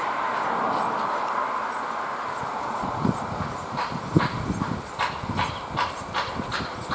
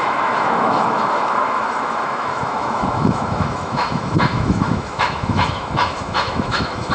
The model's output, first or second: second